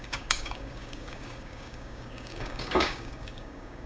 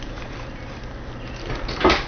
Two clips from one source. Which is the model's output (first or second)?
first